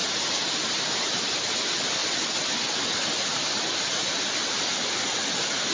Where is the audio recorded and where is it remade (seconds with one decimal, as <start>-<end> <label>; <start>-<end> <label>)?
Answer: 0.0-1.2 remade; 1.2-5.7 recorded